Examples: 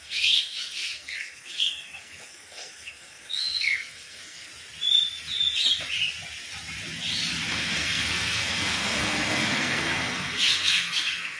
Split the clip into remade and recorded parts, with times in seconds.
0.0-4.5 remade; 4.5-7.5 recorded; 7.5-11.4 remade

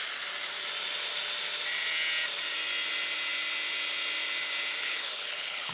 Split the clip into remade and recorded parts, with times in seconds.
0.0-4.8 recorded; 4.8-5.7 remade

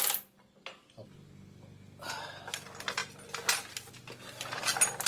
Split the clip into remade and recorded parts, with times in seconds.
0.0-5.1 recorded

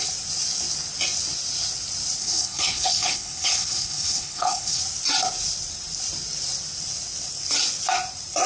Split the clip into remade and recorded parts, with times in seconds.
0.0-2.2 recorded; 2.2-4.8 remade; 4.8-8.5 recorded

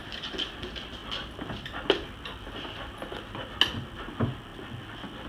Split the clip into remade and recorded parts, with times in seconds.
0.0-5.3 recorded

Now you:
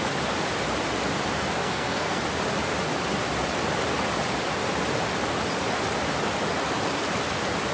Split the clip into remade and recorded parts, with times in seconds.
0.0-1.6 recorded; 1.6-2.2 remade; 2.2-7.7 recorded

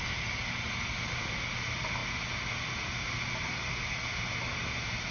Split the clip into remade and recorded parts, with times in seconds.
0.0-5.1 recorded

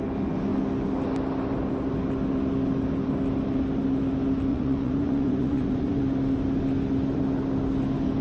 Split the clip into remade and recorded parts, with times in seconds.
0.0-4.5 recorded; 4.5-6.0 remade; 6.0-8.2 recorded